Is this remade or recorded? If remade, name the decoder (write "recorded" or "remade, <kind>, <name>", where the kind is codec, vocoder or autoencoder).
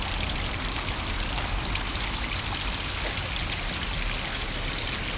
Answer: recorded